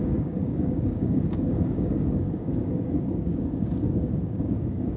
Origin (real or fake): fake